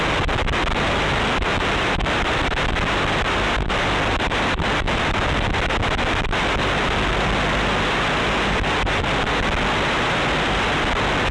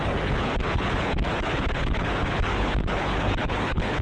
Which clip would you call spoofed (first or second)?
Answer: second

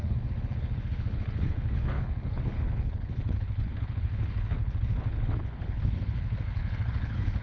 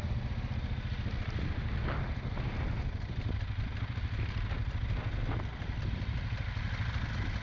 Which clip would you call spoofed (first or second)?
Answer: first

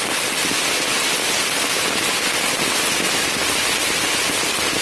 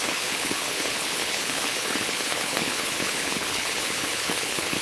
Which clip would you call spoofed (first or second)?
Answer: second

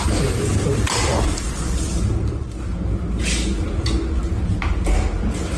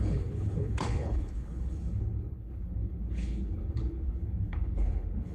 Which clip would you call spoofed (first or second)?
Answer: second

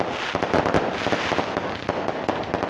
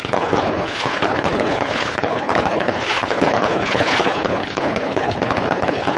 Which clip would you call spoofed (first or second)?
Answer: second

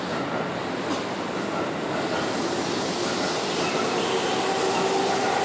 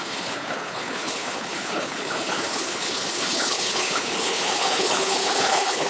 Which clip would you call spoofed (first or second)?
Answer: second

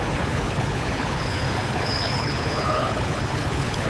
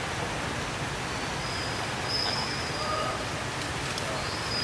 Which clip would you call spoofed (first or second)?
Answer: first